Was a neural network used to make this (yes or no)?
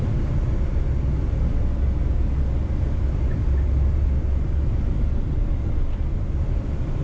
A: no